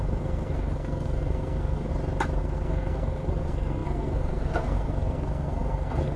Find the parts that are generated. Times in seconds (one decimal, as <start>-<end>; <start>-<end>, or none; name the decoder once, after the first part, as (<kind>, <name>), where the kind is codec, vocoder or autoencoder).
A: 0.0-1.9 (codec, SNAC); 2.4-6.2